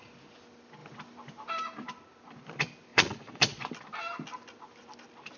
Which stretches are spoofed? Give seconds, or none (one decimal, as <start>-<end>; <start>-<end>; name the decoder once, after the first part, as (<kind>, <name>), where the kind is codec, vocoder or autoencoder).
2.9-3.7 (vocoder, Vocos)